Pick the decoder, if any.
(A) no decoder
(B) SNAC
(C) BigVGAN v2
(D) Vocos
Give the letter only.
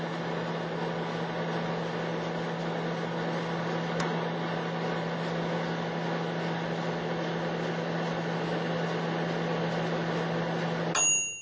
A